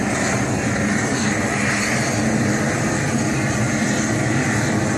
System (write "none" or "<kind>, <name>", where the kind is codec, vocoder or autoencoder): none